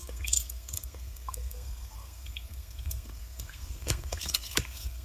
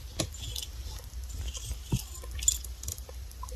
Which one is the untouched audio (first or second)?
second